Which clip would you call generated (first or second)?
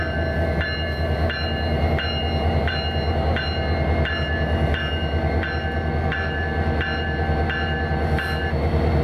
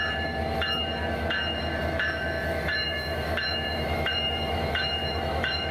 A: second